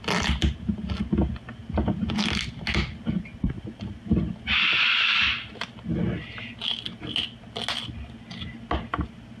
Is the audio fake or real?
real